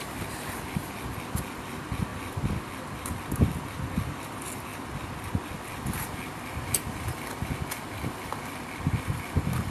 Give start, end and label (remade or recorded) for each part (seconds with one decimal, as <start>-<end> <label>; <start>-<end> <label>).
0.0-9.7 recorded